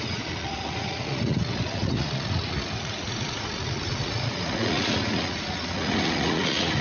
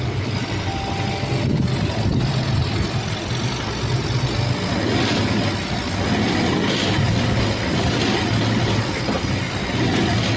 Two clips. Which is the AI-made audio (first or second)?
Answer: first